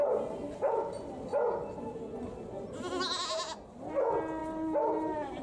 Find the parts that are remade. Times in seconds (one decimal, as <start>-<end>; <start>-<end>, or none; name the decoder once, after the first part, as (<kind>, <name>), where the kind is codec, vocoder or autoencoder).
none